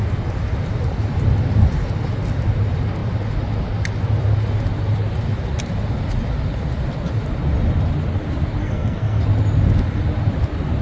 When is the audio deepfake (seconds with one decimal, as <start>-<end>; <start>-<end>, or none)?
8.6-9.2